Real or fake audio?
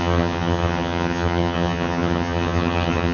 fake